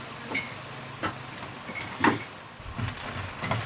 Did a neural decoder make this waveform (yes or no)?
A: no